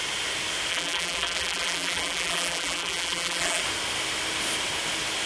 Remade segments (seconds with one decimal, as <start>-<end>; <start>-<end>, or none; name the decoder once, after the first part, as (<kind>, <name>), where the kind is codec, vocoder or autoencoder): 0.7-3.6 (vocoder, BigVGAN v2)